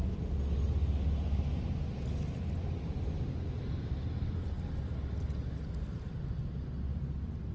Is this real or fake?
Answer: real